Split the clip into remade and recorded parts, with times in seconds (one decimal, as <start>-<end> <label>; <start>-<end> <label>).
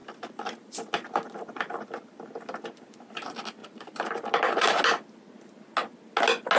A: 0.0-1.8 remade; 1.8-3.6 recorded; 3.6-4.8 remade; 4.8-6.6 recorded